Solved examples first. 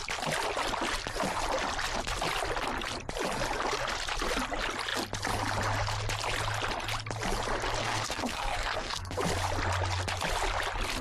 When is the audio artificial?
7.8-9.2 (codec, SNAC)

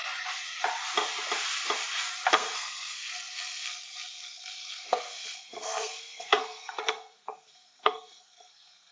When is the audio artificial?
2.3-8.9 (codec, SNAC)